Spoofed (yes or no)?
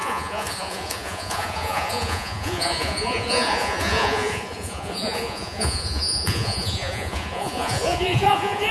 yes